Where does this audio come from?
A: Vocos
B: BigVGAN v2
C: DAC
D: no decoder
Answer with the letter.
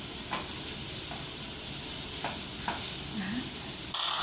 D